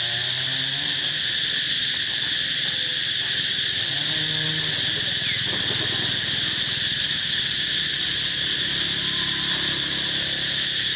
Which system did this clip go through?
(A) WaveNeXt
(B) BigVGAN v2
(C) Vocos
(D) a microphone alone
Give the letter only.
D